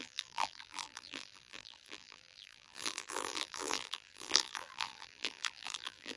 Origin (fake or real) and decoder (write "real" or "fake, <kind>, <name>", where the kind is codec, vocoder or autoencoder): fake, vocoder, BigVGAN v2